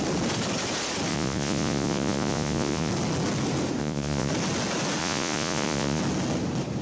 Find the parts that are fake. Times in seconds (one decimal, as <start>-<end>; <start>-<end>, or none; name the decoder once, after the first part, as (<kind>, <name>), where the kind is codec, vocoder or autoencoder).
1.1-2.9 (vocoder, Vocos); 3.8-4.3; 5.0-6.0